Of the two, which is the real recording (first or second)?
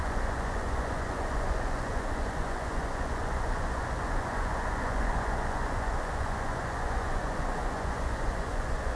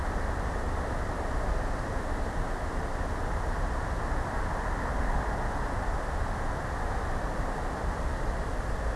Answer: second